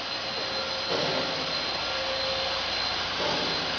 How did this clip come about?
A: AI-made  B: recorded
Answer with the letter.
B